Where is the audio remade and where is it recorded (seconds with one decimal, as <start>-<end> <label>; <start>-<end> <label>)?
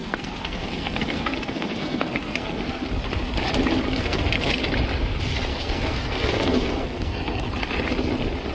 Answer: 0.0-2.8 remade; 2.8-3.9 recorded; 3.9-4.6 remade; 4.6-5.5 recorded; 5.5-7.4 remade; 7.4-8.5 recorded